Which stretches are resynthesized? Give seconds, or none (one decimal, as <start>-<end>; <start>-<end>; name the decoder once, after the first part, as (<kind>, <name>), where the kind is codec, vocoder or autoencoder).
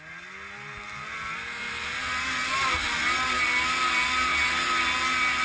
none